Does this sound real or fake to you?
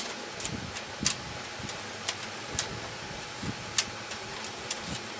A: real